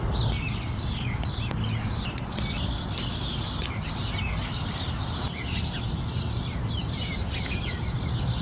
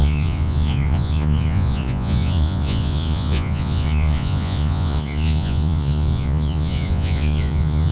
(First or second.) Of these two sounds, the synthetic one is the second